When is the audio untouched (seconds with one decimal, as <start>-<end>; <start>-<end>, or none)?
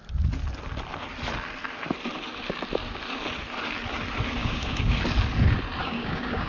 0.0-4.4; 5.0-5.8